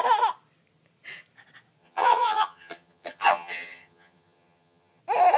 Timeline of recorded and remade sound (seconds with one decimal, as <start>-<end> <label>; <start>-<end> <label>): 0.0-1.8 recorded; 1.8-5.0 remade; 5.0-5.4 recorded